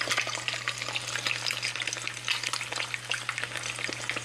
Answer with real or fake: real